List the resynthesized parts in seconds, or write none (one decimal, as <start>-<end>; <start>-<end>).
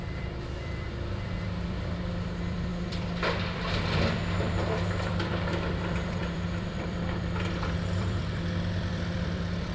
0.0-9.7